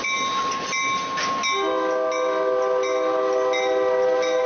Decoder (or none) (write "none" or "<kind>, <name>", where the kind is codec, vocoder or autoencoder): none